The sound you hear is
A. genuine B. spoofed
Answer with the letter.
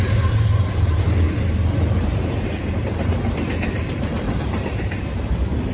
B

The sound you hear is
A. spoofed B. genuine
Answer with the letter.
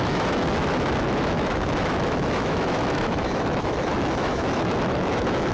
A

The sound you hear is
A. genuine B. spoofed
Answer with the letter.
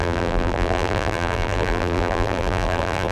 B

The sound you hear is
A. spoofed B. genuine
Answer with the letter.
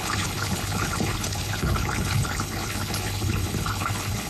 A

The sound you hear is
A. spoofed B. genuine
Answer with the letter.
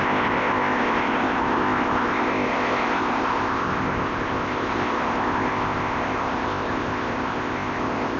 A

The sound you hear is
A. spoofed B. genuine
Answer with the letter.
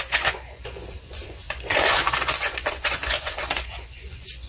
A